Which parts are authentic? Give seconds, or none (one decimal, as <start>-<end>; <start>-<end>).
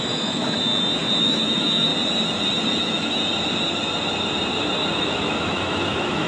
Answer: 0.7-1.2; 1.9-2.8; 3.2-5.0